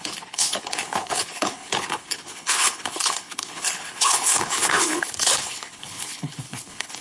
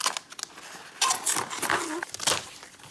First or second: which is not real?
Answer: first